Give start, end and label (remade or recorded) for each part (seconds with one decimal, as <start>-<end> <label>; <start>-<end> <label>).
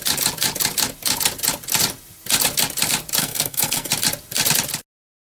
0.0-3.2 recorded; 3.2-3.9 remade; 3.9-5.4 recorded